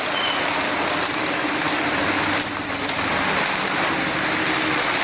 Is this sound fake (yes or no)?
no